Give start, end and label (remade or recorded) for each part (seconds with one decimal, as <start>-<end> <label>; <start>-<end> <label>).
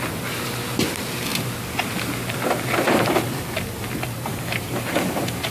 0.0-4.3 recorded; 4.3-5.5 remade